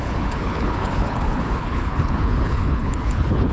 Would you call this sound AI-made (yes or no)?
yes